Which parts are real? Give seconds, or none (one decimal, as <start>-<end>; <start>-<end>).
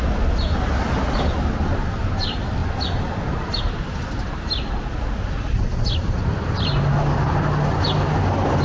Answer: 0.0-8.6